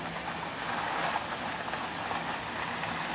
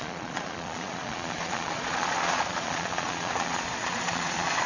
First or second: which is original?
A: first